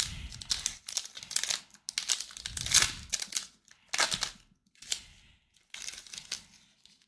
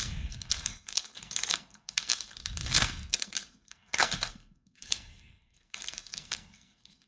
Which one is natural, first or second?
first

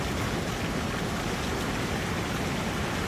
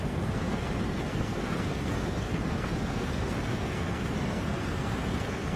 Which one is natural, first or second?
first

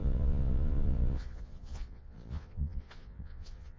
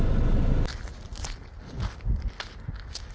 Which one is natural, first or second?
second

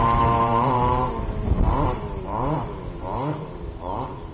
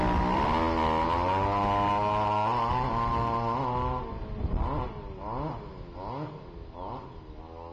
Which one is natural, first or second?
second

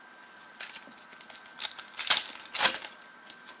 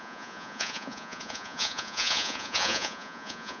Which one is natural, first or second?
first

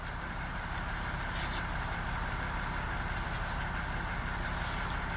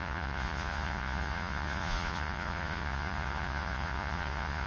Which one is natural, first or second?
first